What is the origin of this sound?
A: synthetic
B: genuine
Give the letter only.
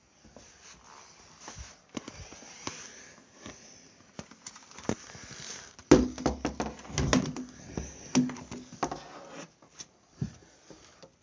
B